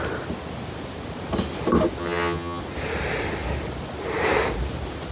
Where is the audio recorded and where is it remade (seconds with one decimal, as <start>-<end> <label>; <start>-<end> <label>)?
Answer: 0.0-2.0 recorded; 2.0-2.6 remade; 2.6-5.1 recorded